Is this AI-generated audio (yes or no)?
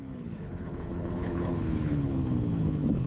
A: yes